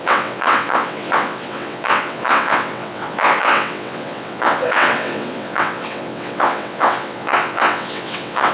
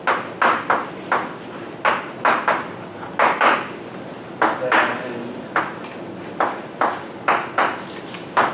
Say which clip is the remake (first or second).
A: first